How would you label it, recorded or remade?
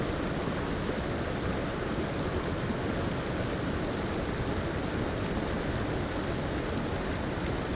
recorded